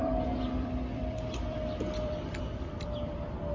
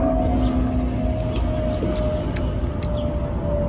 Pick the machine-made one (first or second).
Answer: first